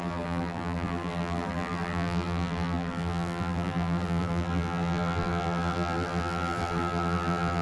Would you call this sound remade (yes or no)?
yes